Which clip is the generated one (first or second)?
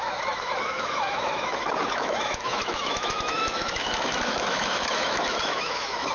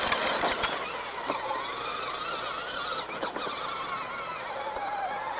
first